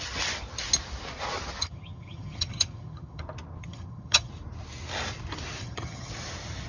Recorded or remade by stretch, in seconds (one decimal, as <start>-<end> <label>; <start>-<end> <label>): 0.0-1.6 recorded; 1.6-3.2 remade; 3.2-3.6 recorded; 3.6-4.3 remade; 4.3-5.6 recorded; 5.6-6.1 remade; 6.1-6.7 recorded